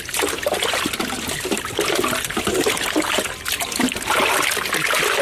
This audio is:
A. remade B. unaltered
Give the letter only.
B